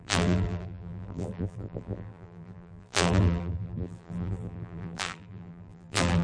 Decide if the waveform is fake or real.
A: fake